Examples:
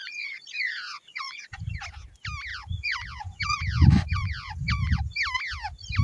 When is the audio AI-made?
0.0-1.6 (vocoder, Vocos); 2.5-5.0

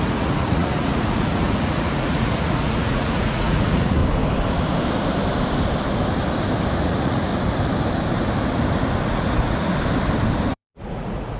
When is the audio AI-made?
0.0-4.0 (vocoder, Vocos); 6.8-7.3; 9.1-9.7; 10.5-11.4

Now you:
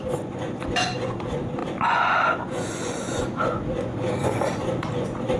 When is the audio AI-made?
0.0-5.4 (vocoder, Vocos)

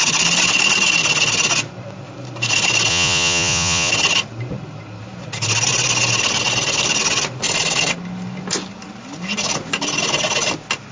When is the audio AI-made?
2.9-3.9 (vocoder, Vocos)